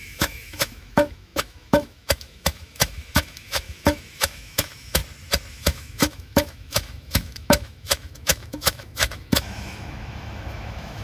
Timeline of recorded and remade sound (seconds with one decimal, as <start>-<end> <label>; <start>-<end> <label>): 0.0-5.0 remade; 5.0-5.5 recorded; 5.5-11.0 remade